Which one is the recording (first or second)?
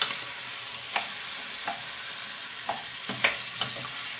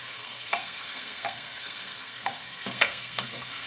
first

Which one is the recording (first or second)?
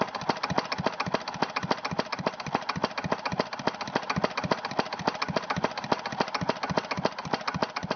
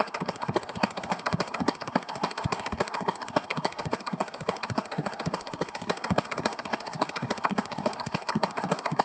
first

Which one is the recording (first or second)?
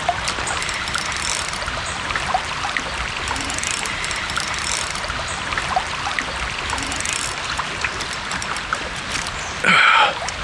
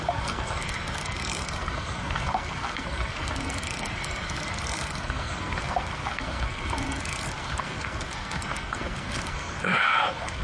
first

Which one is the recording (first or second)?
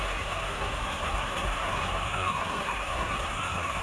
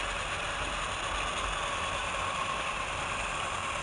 second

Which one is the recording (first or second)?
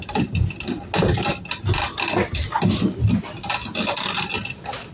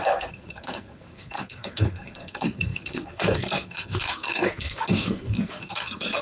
first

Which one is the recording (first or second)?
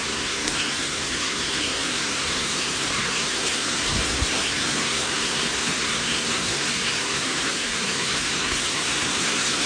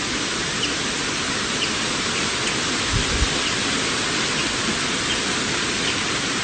second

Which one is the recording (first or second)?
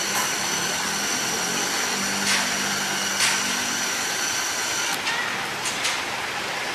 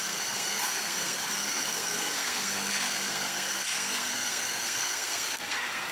first